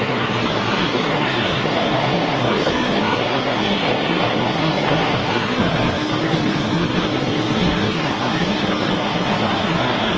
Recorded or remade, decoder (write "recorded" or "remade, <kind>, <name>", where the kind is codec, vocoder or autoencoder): remade, codec, SNAC